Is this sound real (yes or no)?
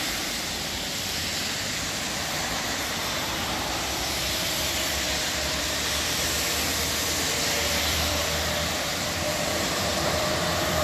no